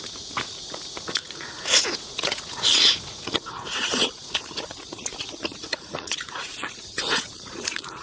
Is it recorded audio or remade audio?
remade